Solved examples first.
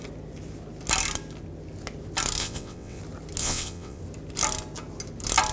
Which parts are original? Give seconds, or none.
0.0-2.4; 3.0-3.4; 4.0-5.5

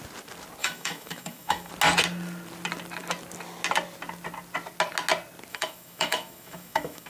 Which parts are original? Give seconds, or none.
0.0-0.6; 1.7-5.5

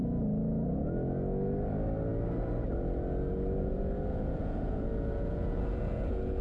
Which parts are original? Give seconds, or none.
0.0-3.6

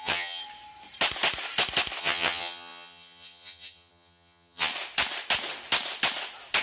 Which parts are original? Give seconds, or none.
0.4-2.0; 4.7-6.6

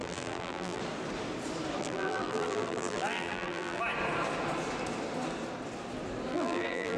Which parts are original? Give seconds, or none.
0.8-1.8; 3.8-6.3